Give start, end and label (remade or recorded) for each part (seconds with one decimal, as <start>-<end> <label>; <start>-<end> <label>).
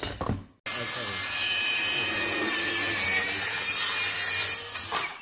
0.0-1.2 recorded; 1.2-3.8 remade; 3.8-5.2 recorded